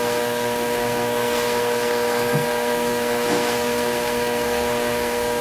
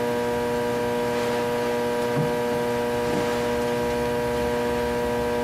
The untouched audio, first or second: second